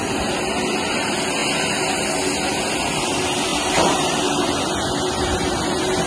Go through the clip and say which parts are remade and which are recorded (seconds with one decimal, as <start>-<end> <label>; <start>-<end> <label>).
0.0-3.5 recorded; 3.5-4.6 remade; 4.6-6.1 recorded